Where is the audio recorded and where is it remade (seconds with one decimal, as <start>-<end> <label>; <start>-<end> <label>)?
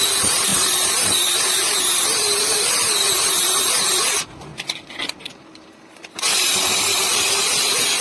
0.0-4.5 remade; 4.5-5.3 recorded; 5.3-8.0 remade